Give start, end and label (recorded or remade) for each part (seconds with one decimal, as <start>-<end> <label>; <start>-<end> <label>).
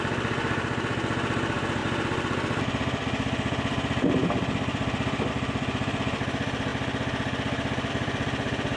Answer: 0.0-6.7 remade; 6.7-7.9 recorded; 7.9-8.8 remade